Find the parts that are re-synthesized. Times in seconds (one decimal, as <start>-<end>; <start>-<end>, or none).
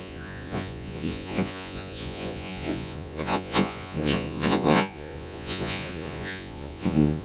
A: 0.0-7.2